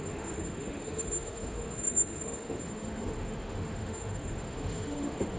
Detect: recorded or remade remade